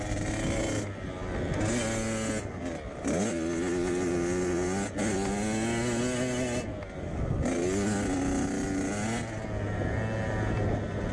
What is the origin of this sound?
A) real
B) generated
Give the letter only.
A